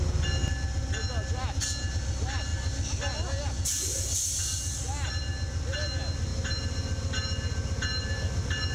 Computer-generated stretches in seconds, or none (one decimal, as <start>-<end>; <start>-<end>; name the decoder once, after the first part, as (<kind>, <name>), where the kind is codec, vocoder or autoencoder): none